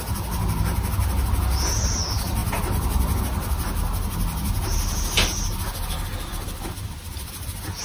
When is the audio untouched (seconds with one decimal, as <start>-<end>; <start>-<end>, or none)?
0.0-7.8